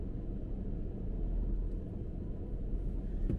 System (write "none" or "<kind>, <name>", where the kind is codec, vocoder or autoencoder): none